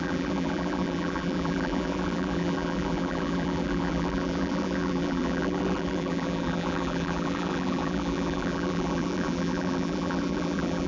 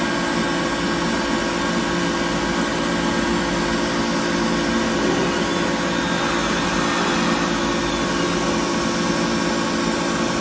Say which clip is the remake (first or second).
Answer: first